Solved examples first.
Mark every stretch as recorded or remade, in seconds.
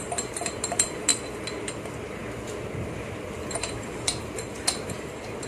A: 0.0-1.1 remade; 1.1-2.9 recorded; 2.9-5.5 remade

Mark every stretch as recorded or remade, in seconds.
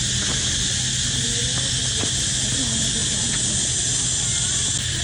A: 0.0-5.0 recorded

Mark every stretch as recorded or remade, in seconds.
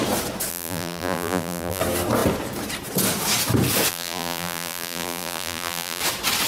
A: 0.0-0.5 recorded; 0.5-1.8 remade; 1.8-3.9 recorded; 3.9-6.0 remade; 6.0-6.5 recorded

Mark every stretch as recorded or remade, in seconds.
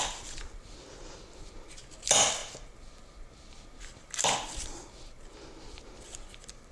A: 0.0-6.7 recorded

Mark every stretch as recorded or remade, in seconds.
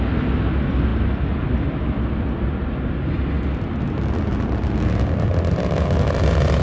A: 0.0-6.6 recorded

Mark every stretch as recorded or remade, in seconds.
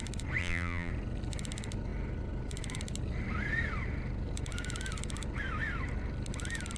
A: 0.0-0.4 recorded; 0.4-0.9 remade; 0.9-6.8 recorded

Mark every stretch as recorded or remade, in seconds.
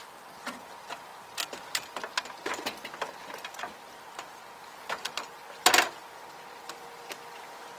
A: 0.0-7.8 recorded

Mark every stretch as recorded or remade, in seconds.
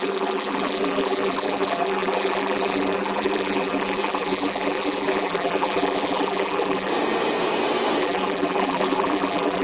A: 0.0-6.9 remade; 6.9-8.0 recorded; 8.0-9.6 remade